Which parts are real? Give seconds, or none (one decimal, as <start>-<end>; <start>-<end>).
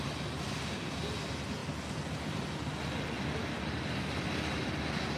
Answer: 0.0-5.2